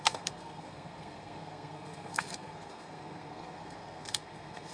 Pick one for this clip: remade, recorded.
remade